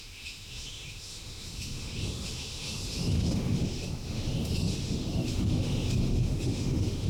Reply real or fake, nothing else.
fake